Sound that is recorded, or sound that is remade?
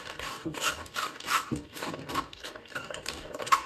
remade